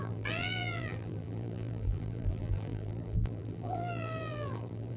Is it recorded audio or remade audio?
remade